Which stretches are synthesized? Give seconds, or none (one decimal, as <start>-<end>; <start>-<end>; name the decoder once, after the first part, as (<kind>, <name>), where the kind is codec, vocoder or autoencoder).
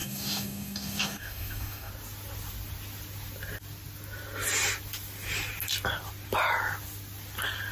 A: 0.0-1.9 (codec, DAC)